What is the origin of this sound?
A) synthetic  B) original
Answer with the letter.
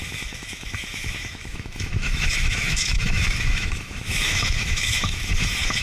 A